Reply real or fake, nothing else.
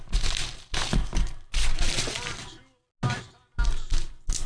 real